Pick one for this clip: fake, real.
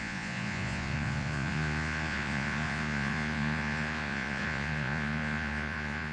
fake